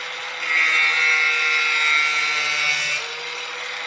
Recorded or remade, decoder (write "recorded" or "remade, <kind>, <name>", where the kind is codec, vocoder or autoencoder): recorded